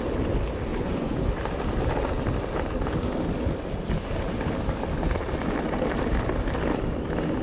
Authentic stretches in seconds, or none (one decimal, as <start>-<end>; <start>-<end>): 0.0-0.7; 1.2-7.4